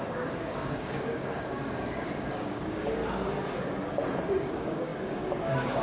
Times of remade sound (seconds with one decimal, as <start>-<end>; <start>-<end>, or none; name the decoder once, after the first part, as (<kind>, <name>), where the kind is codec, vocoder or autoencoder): 0.0-3.0 (codec, DAC); 4.5-5.8